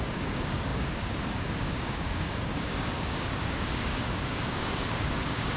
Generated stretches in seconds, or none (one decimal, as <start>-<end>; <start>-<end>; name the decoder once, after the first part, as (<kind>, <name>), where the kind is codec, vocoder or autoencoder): 0.0-5.6 (codec, DAC)